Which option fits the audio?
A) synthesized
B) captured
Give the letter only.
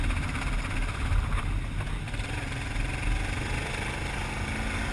B